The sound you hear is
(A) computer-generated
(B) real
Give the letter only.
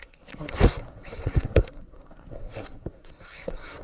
A